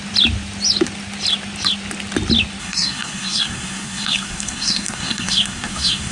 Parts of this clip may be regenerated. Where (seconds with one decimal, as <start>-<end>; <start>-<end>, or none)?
2.6-6.1